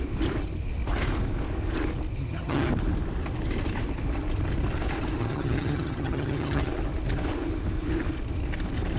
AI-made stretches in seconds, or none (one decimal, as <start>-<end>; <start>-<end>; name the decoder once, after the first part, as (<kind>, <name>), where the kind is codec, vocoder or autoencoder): 2.2-2.7 (vocoder, HiFi-GAN); 5.2-6.7